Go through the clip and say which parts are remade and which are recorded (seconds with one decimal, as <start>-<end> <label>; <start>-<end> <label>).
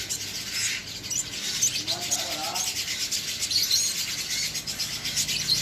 0.0-5.6 recorded